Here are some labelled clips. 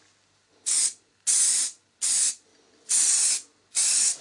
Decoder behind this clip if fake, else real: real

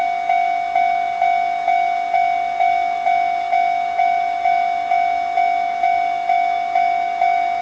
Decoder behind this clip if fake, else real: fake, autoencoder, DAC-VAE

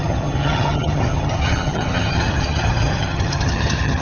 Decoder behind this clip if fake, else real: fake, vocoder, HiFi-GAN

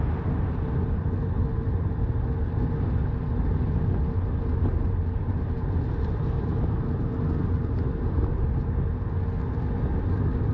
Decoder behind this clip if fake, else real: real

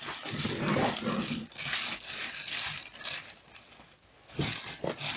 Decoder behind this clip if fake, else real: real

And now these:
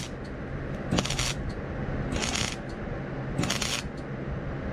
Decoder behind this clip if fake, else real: real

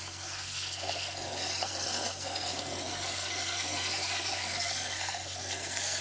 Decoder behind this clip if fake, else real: fake, codec, SNAC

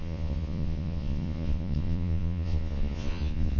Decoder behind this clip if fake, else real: fake, vocoder, Vocos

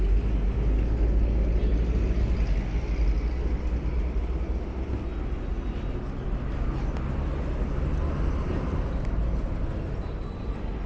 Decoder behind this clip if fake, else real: real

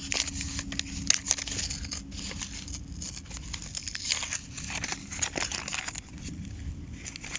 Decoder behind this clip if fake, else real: real